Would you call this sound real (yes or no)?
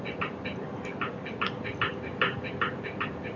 yes